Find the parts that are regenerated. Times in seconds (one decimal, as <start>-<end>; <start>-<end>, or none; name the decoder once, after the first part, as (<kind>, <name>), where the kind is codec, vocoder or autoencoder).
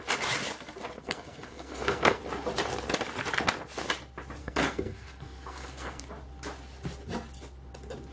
1.0-2.2 (codec, SNAC); 4.4-6.0